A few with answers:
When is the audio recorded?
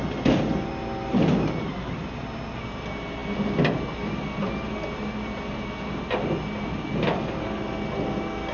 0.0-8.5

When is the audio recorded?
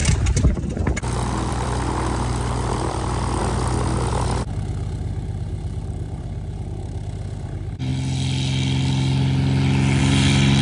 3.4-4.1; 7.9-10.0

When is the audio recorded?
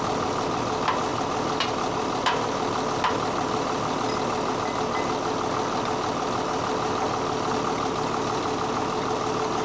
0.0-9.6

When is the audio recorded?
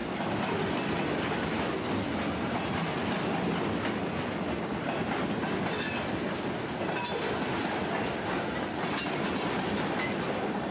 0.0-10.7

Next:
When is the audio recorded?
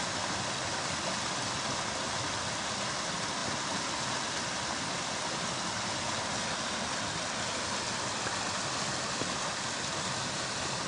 0.0-10.9